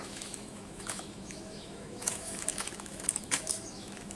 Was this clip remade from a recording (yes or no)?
yes